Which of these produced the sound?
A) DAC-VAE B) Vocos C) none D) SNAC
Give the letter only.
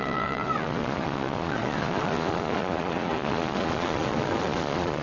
B